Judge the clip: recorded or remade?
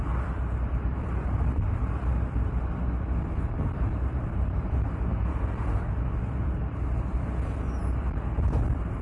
remade